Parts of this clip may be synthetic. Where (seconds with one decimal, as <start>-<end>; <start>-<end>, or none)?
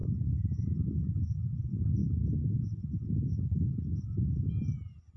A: none